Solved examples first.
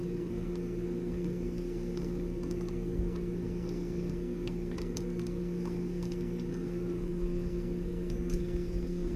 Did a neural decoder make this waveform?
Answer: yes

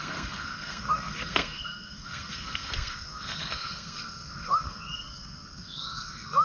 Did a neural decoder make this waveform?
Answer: yes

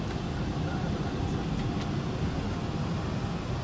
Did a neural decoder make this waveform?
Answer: no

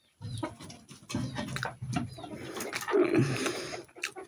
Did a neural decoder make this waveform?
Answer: no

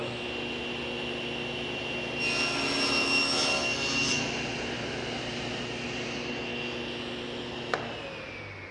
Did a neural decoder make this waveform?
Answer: no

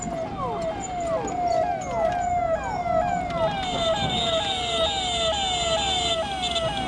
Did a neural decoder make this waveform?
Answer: no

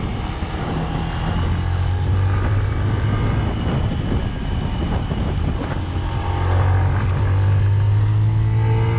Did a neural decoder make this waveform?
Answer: no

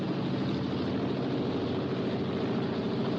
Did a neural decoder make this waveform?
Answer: no